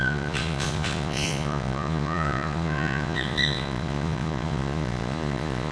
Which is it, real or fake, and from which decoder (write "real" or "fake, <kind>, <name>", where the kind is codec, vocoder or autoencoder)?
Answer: fake, vocoder, Vocos